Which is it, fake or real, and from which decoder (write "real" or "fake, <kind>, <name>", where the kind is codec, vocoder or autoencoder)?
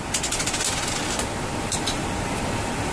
real